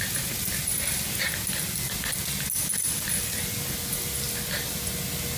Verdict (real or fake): real